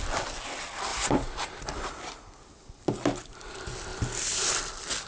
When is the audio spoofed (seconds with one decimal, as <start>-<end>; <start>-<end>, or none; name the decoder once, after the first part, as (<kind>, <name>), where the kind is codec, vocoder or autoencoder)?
0.9-1.7 (vocoder, BigVGAN v2)